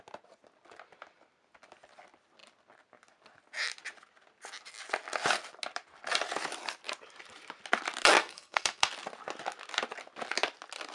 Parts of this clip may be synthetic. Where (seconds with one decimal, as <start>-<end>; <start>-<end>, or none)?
8.2-8.9